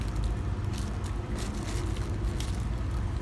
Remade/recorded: recorded